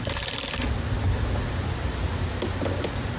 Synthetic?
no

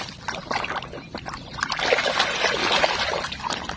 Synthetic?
no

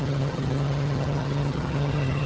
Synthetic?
yes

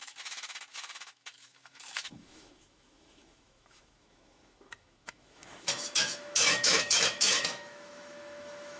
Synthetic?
yes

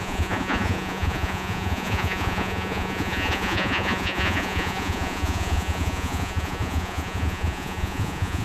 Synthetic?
yes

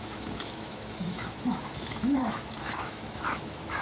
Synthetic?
yes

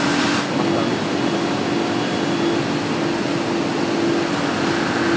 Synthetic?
no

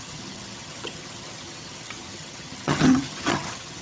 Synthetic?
yes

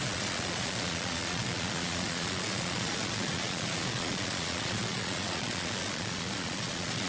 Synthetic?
yes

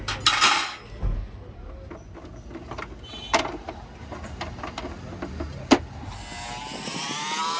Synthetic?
no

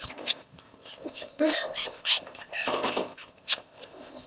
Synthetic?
yes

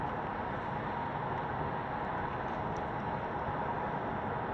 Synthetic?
no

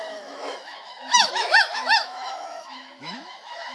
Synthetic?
yes